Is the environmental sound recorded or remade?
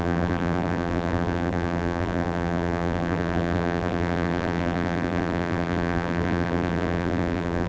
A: remade